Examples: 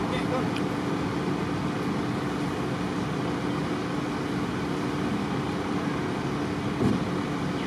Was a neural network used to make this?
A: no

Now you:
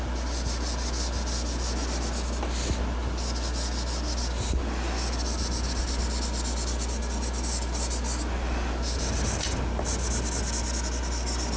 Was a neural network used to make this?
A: no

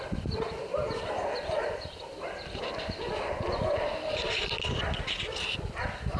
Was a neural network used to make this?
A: no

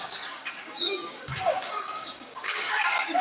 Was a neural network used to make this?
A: yes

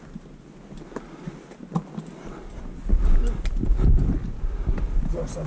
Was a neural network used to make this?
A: no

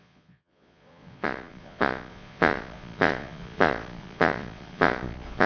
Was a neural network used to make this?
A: yes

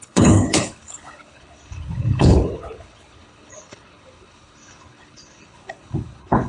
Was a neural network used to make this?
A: yes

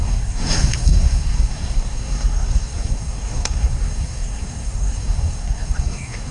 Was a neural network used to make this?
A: yes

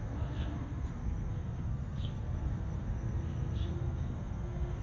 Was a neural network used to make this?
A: yes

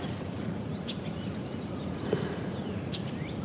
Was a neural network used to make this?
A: yes